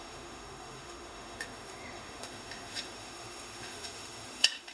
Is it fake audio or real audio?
fake